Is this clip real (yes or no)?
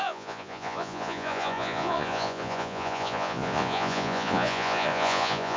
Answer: no